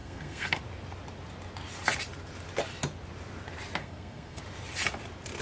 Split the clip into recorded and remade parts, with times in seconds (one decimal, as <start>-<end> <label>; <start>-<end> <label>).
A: 0.0-0.6 remade; 0.6-3.8 recorded; 3.8-4.4 remade; 4.4-5.4 recorded